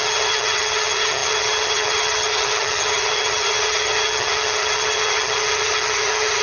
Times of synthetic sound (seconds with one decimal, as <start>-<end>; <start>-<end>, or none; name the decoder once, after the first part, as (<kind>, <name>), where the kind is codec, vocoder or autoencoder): 0.0-6.4 (vocoder, HiFi-GAN)